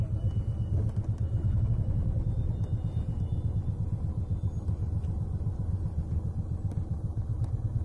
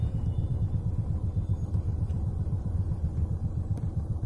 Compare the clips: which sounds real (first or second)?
first